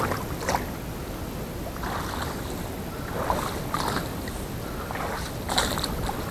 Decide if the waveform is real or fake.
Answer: real